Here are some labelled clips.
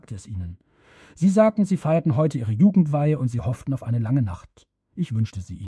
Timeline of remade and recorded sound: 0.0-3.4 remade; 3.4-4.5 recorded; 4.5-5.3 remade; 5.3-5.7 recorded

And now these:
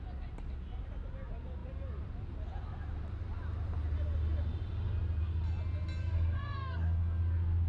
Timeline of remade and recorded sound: 0.0-6.0 recorded; 6.0-7.2 remade; 7.2-7.7 recorded

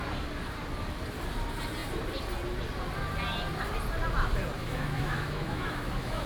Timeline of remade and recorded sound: 0.0-4.6 recorded; 4.6-6.3 remade

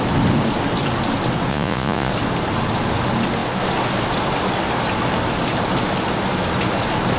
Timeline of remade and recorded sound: 0.0-1.5 recorded; 1.5-2.1 remade; 2.1-7.2 recorded

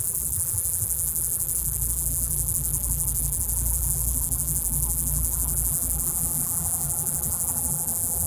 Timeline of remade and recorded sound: 0.0-8.3 remade